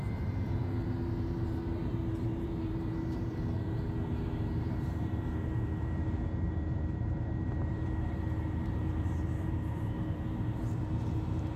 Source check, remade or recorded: remade